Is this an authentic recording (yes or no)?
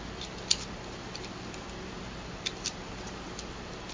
yes